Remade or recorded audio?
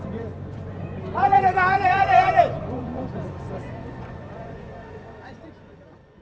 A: remade